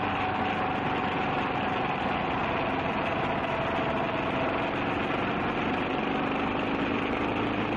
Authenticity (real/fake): real